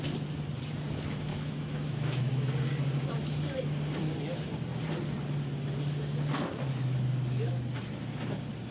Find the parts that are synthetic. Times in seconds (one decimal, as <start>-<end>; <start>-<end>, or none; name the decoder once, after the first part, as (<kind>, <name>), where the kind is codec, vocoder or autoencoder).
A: 1.3-2.3 (autoencoder, DAC-VAE)